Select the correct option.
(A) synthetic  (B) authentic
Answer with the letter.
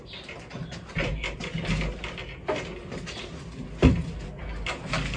B